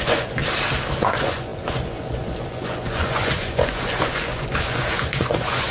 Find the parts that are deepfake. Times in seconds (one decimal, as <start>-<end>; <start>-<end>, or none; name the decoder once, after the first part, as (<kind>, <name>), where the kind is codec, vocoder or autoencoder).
0.0-0.4 (vocoder, Vocos); 1.0-5.7